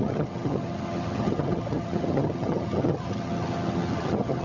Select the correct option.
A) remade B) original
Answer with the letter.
A